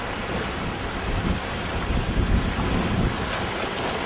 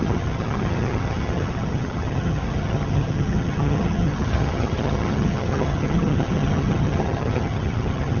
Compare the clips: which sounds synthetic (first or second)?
second